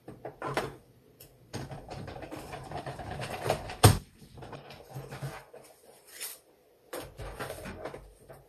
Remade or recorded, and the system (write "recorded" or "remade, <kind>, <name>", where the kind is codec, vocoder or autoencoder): remade, vocoder, BigVGAN v2